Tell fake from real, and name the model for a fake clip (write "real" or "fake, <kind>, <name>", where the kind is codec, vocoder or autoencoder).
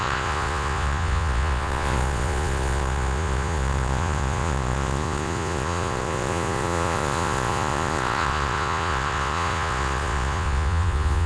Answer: fake, vocoder, Vocos